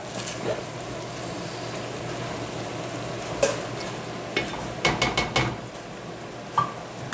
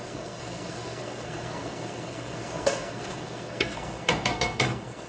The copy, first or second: second